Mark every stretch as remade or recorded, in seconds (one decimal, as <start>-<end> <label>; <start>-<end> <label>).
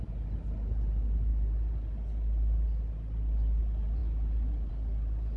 0.0-5.4 recorded